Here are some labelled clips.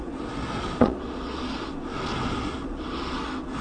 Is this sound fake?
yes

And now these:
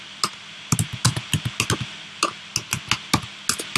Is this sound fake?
no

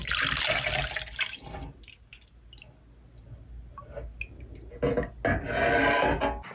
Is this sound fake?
no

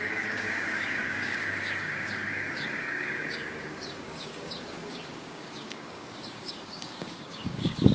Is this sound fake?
yes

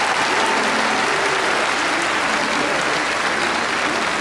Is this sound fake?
no